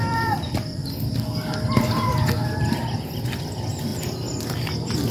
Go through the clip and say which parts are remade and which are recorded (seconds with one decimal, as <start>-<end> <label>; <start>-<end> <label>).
0.0-0.8 remade; 0.8-2.7 recorded; 2.7-3.9 remade; 3.9-5.1 recorded